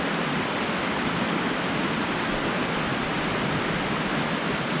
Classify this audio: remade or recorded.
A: recorded